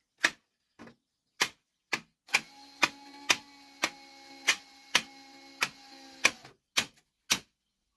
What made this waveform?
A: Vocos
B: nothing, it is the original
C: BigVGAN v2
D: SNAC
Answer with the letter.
B